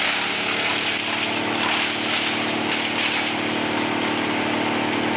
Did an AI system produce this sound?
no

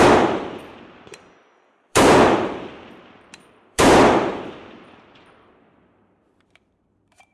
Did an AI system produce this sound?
yes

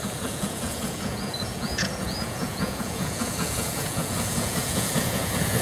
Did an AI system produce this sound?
yes